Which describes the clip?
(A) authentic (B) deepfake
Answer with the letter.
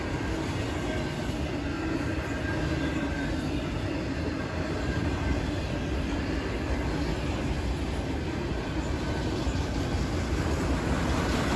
A